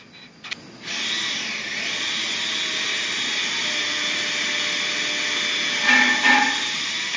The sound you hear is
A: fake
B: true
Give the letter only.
B